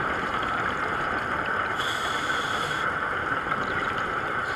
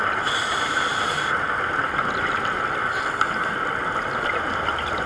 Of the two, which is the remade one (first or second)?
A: first